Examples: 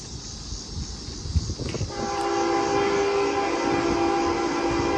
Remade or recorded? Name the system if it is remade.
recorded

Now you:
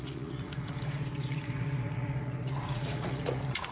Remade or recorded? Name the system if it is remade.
remade, vocoder, Vocos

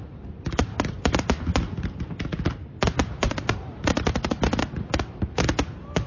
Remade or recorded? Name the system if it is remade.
recorded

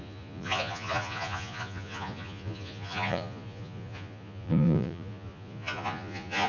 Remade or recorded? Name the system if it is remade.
remade, vocoder, Vocos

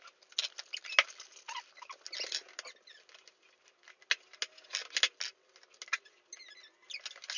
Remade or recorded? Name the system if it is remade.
recorded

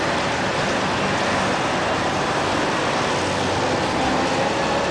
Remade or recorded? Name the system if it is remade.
recorded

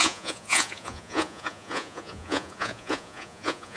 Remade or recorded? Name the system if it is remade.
remade, vocoder, Vocos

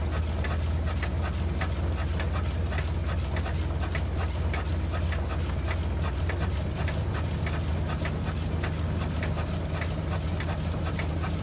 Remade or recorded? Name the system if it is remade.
recorded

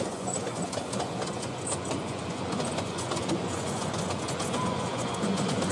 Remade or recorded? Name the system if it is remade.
remade, vocoder, Vocos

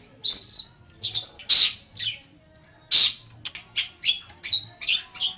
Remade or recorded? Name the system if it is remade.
recorded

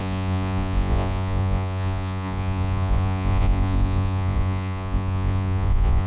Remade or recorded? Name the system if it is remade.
remade, vocoder, Vocos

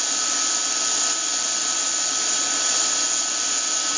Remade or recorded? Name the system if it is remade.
recorded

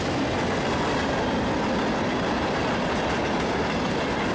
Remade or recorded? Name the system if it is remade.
recorded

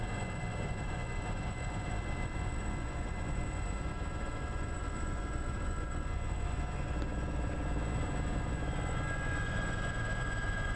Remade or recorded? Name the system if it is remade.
remade, vocoder, Vocos